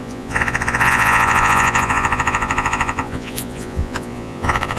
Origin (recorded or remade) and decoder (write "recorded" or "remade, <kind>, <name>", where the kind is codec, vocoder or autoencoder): remade, vocoder, Vocos